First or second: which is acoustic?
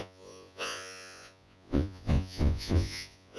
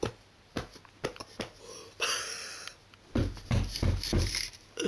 second